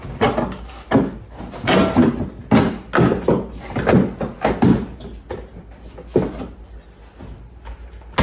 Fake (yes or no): no